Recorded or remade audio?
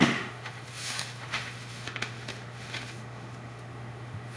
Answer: remade